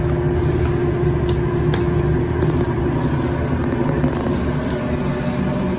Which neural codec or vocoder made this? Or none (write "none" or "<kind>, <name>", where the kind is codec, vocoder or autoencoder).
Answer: none